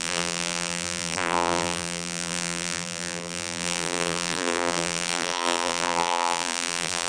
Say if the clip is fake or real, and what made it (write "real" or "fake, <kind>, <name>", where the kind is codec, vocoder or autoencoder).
fake, vocoder, BigVGAN v2